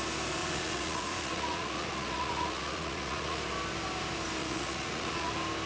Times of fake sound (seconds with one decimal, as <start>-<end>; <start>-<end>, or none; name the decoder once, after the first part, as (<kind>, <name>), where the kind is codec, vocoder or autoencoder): 0.4-3.4 (vocoder, Vocos); 4.4-5.3